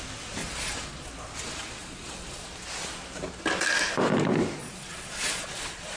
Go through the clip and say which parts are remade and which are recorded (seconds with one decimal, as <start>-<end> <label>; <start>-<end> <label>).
0.0-0.4 recorded; 0.4-1.1 remade; 1.1-1.8 recorded; 1.8-2.5 remade; 2.5-4.6 recorded; 4.6-6.0 remade